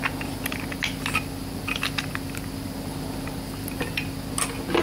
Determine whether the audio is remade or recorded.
recorded